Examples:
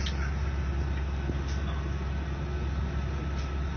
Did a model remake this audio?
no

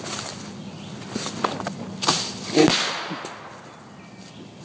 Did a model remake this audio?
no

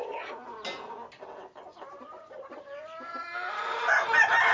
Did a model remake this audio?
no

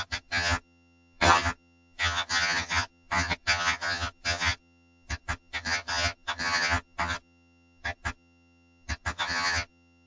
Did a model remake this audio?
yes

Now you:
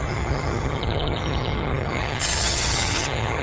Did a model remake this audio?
yes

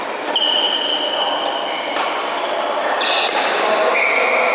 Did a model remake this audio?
no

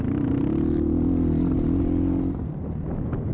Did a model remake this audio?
no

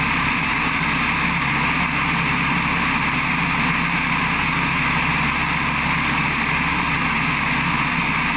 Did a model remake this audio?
no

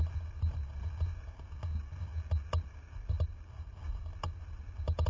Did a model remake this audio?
no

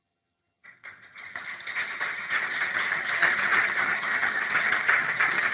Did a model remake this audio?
yes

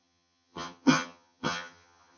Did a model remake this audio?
yes